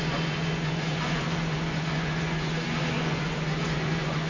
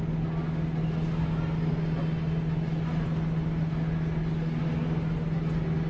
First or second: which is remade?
first